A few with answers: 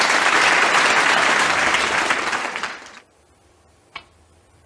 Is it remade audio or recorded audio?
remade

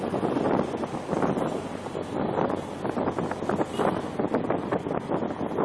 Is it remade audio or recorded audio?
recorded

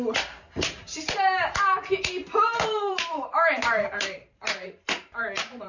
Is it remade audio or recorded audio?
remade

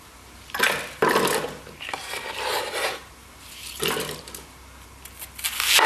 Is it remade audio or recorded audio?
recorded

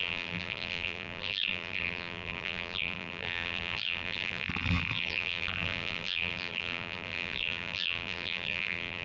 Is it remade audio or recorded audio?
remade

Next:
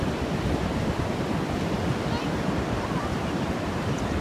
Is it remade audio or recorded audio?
remade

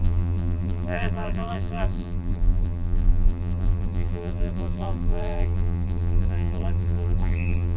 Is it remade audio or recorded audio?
remade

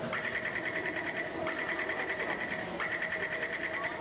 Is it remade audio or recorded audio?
recorded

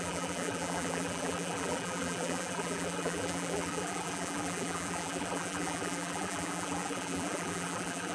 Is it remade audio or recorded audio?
remade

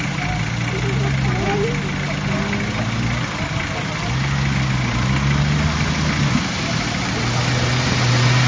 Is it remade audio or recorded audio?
recorded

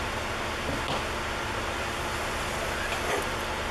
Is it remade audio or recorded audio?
recorded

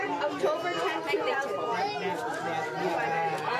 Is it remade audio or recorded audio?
recorded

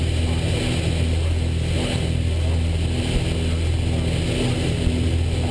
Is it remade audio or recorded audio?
recorded